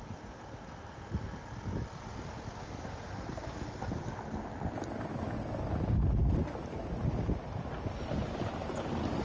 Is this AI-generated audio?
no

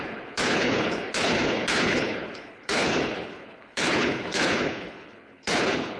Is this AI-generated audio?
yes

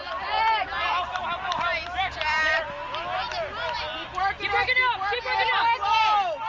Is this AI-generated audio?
no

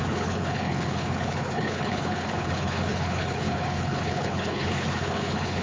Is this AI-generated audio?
yes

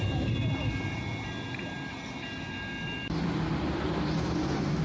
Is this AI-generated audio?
no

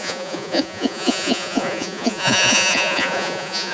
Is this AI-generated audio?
yes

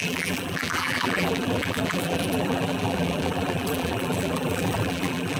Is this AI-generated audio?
yes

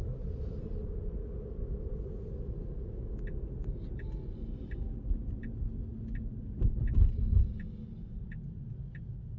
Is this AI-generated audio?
no